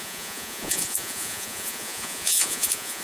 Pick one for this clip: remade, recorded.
remade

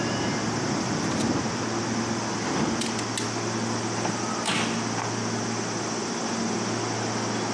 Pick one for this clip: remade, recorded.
recorded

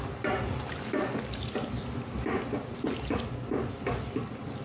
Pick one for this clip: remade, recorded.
recorded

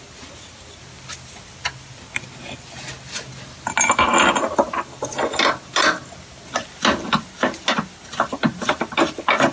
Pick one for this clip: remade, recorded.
recorded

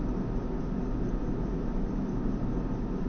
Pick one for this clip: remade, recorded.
recorded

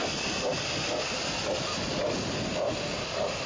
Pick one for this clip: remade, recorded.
recorded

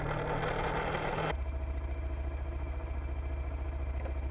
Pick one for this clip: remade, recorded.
recorded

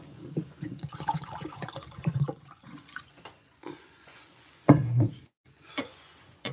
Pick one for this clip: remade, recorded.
remade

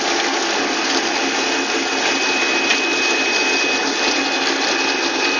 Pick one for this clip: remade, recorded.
recorded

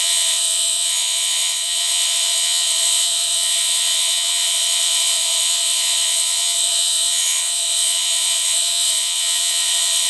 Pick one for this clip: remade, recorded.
remade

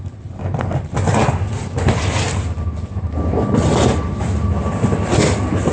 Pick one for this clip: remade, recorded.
recorded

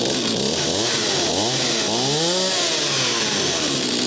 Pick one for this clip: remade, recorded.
recorded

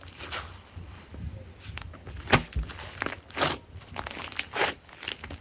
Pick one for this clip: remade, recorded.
recorded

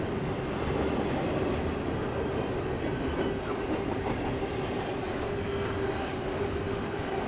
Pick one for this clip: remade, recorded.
recorded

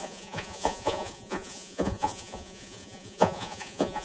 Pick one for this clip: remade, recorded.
remade